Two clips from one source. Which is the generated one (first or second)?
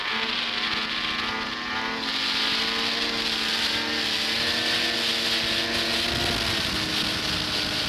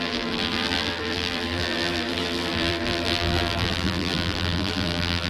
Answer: second